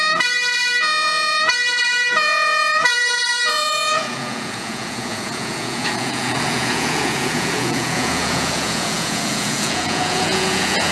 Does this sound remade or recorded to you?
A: remade